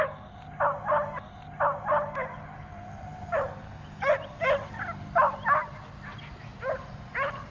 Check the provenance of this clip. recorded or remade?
recorded